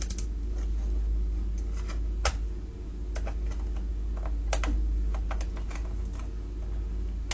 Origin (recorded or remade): recorded